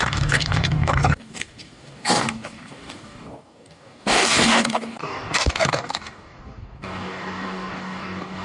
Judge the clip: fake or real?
fake